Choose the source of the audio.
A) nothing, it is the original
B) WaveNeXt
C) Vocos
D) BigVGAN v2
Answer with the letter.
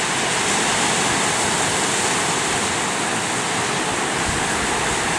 A